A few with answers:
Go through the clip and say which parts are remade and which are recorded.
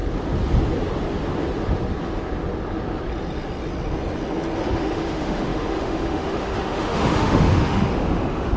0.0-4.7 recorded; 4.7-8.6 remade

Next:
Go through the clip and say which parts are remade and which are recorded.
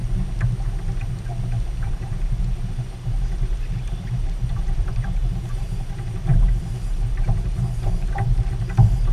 0.0-1.9 recorded; 1.9-9.1 remade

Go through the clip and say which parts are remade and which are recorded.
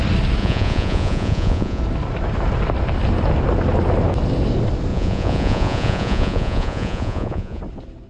0.0-0.4 recorded; 0.4-1.8 remade; 1.8-4.9 recorded; 4.9-7.6 remade; 7.6-8.1 recorded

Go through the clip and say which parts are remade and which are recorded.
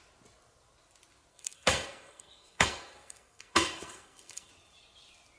0.0-1.3 recorded; 1.3-4.5 remade; 4.5-5.4 recorded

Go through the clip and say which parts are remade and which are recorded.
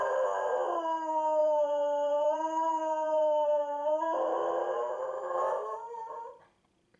0.0-1.4 recorded; 1.4-4.9 remade; 4.9-7.0 recorded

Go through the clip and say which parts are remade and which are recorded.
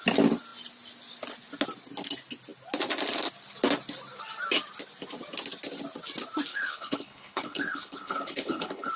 0.0-6.5 recorded; 6.5-9.0 remade